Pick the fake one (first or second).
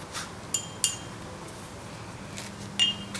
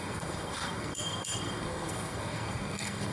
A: second